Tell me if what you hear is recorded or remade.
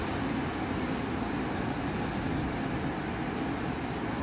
recorded